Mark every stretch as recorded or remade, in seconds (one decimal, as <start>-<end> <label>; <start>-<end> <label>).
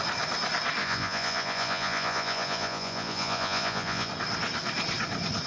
0.0-0.8 recorded; 0.8-4.1 remade; 4.1-5.5 recorded